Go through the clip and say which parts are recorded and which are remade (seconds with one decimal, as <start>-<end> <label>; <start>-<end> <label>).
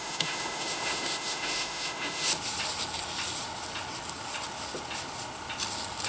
0.0-2.3 remade; 2.3-6.1 recorded